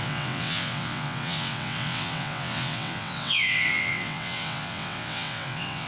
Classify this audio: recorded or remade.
remade